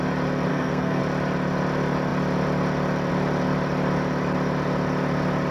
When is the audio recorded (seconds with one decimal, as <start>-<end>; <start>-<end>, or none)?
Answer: 0.0-0.5; 1.0-5.5